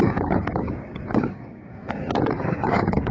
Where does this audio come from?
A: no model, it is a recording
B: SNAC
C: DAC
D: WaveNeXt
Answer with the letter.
C